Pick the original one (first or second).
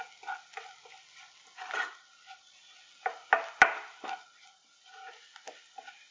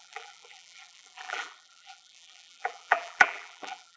first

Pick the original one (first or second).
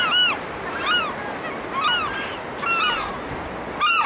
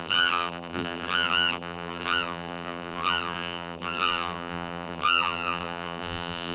first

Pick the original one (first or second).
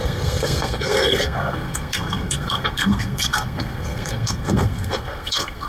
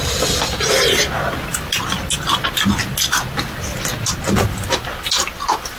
second